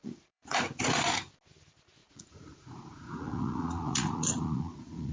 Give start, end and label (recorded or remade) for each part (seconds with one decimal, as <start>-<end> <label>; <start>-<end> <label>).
0.0-0.6 remade; 0.6-2.0 recorded; 2.0-5.1 remade